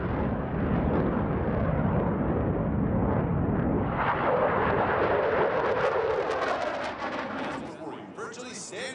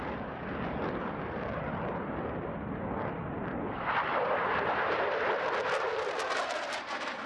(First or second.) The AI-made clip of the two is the second